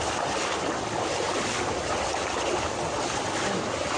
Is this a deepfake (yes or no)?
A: no